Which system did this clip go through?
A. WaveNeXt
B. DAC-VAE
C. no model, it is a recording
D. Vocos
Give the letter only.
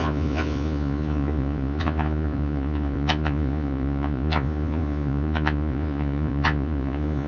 D